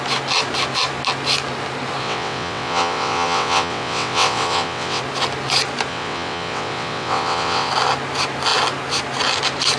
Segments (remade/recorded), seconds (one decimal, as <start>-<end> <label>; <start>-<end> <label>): 0.0-2.0 recorded; 2.0-5.0 remade; 5.0-5.9 recorded; 5.9-7.7 remade; 7.7-9.8 recorded